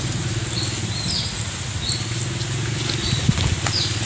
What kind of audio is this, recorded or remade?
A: recorded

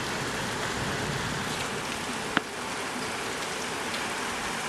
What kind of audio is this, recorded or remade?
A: recorded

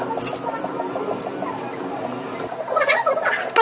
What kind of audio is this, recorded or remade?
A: recorded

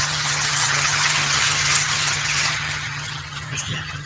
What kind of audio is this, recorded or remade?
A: remade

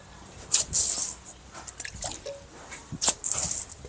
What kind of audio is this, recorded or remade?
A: recorded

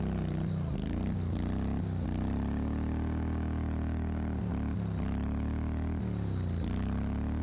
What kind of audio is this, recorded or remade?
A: recorded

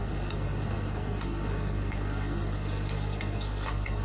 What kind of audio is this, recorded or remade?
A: remade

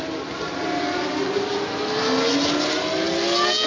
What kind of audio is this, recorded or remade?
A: recorded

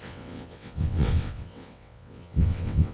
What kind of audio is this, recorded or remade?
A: remade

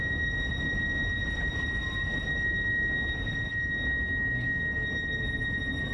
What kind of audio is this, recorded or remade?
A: recorded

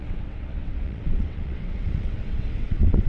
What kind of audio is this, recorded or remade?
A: remade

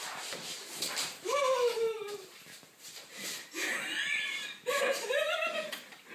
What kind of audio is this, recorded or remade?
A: remade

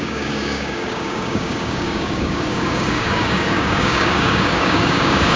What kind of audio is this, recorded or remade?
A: remade